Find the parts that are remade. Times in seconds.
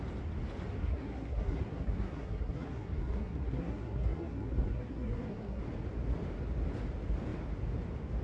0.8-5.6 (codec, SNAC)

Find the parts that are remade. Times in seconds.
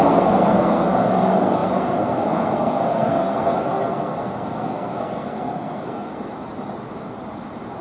0.0-6.3 (codec, SNAC)